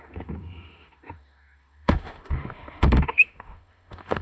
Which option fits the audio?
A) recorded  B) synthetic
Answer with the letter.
B